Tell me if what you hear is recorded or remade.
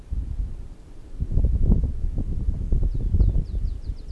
remade